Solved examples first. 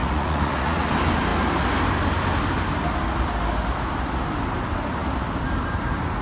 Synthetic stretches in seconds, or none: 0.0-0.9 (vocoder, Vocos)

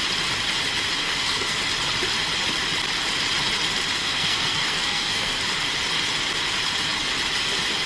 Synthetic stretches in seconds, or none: 1.0-1.6 (codec, SNAC); 4.0-5.4